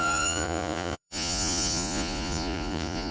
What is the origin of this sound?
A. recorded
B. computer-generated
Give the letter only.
B